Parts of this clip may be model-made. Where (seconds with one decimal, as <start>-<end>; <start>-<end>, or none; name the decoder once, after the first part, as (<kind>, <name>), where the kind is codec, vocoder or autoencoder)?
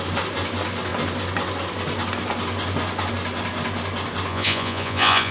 4.3-5.3 (vocoder, Vocos)